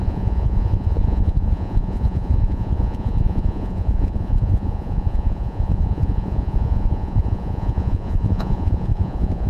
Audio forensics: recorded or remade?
remade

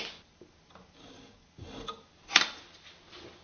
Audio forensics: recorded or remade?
recorded